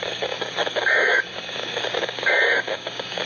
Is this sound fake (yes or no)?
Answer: yes